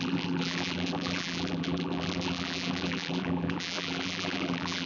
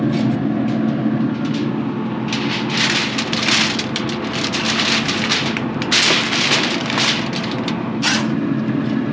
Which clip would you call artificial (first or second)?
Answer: first